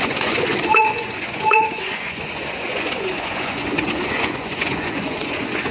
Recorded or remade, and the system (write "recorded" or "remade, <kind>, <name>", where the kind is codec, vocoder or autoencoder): remade, vocoder, Vocos